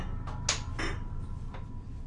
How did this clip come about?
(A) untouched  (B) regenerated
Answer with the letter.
A